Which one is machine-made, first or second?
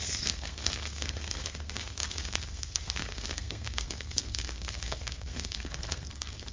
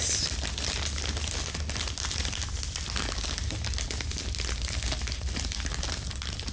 first